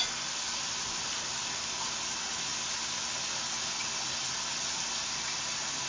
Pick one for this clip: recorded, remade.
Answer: recorded